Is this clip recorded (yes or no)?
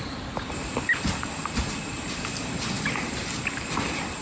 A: yes